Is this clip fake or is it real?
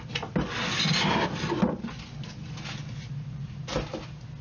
real